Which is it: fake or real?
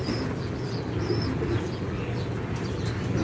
real